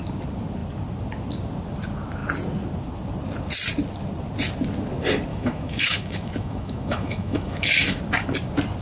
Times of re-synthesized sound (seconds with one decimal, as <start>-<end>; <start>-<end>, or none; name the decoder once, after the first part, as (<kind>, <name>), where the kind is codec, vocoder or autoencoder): 5.3-8.0 (autoencoder, DAC-VAE)